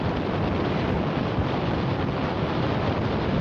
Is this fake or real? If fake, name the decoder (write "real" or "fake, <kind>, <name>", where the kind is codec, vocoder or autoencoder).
real